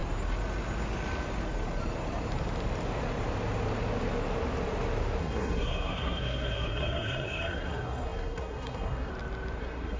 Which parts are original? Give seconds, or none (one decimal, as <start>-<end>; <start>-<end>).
0.0-5.2; 9.1-9.6